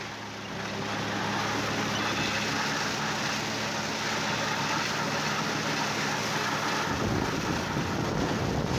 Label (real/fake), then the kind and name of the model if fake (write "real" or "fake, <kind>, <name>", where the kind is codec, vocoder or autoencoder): real